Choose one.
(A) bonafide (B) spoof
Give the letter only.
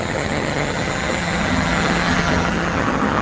B